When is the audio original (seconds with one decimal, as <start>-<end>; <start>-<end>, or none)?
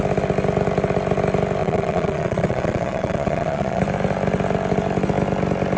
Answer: 0.0-1.6; 3.8-5.8